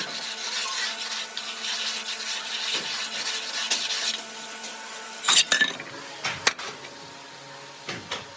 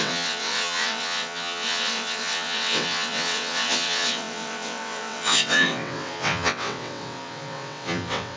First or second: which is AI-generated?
second